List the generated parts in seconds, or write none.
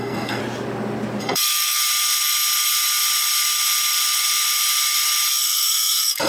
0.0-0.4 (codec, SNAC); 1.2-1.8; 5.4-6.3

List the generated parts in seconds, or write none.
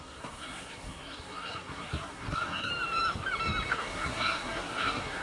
0.0-2.7 (codec, SNAC); 3.7-5.2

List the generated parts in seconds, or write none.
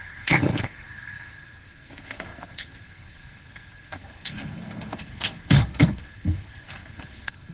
0.0-7.5 (codec, SNAC)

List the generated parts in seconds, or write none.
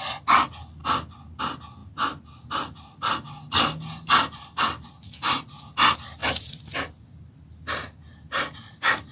none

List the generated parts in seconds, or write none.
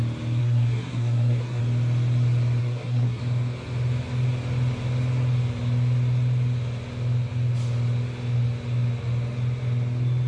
0.4-1.6 (codec, SNAC); 2.6-3.2